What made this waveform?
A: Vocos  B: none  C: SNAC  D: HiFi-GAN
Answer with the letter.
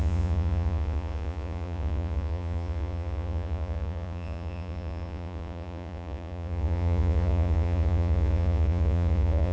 A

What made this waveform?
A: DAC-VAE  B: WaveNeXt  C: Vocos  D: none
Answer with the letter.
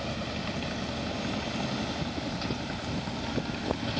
D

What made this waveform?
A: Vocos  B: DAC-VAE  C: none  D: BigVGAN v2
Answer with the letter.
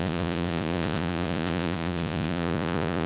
A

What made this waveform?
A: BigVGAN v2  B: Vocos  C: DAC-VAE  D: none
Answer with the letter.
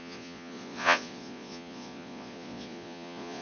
B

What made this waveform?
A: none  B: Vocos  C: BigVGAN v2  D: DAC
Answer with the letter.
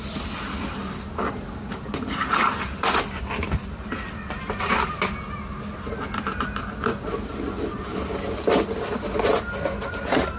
A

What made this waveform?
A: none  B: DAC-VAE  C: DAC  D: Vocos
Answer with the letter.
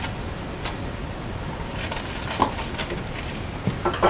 A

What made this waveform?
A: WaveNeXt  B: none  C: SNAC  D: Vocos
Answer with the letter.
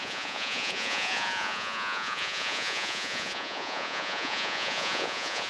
D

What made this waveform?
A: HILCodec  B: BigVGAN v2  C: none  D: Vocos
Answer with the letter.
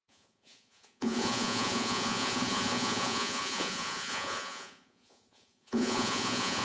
D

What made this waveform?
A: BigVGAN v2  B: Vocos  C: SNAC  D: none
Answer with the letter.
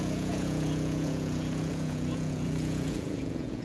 B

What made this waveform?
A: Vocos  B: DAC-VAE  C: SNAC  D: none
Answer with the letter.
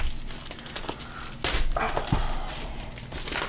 D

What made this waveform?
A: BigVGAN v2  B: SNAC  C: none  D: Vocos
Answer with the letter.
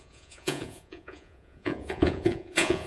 D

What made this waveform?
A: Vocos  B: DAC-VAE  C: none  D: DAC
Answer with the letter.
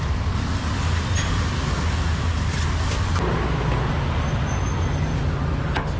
C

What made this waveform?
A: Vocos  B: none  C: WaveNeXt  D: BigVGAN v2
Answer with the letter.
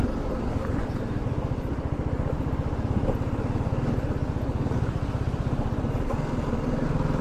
B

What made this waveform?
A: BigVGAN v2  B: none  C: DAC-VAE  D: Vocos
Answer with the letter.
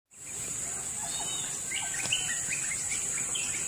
B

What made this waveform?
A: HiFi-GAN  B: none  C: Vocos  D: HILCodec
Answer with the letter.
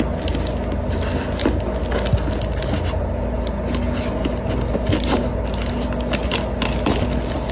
B